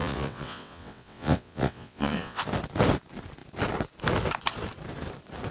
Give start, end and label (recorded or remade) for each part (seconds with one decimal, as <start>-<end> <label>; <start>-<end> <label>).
0.0-2.4 remade; 2.4-5.5 recorded

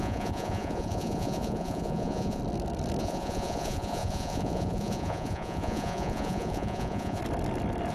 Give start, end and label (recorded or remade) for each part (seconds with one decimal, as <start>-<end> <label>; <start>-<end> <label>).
0.0-2.4 remade; 2.4-3.0 recorded; 3.0-7.2 remade; 7.2-7.9 recorded

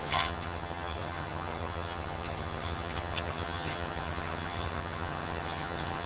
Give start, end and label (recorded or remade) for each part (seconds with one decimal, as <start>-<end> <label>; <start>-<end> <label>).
0.0-6.1 remade

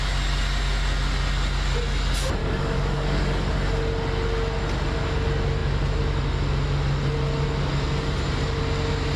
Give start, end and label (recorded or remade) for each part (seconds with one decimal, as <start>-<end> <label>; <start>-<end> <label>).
0.0-2.4 recorded; 2.4-3.5 remade; 3.5-9.2 recorded

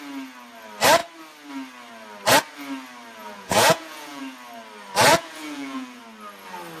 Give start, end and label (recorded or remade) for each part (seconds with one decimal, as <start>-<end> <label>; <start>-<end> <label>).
0.0-3.2 recorded; 3.2-4.2 remade; 4.2-5.1 recorded; 5.1-6.0 remade; 6.0-6.8 recorded

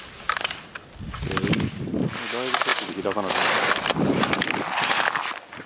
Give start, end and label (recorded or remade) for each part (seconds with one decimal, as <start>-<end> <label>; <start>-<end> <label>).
0.0-5.7 recorded

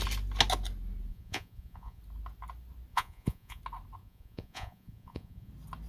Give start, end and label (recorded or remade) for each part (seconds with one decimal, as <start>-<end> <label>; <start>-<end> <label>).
0.0-1.1 recorded; 1.1-2.0 remade; 2.0-2.9 recorded; 2.9-3.6 remade; 3.6-4.0 recorded; 4.0-5.5 remade; 5.5-5.9 recorded

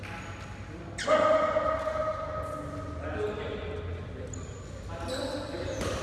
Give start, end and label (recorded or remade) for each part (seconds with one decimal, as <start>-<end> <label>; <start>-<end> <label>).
0.0-6.0 recorded